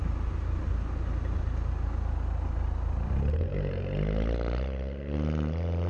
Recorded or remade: recorded